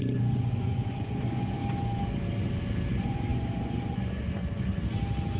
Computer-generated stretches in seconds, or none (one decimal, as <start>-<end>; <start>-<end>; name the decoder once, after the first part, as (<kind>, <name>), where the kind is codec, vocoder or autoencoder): 0.0-1.6 (vocoder, Vocos); 2.9-4.7